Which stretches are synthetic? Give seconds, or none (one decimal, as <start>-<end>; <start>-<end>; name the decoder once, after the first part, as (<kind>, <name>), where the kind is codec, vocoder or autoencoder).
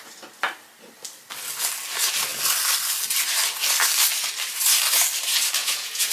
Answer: 5.6-6.1 (vocoder, Vocos)